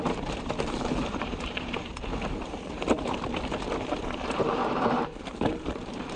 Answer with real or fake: fake